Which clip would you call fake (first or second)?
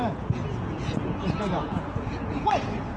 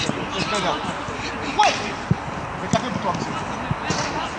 first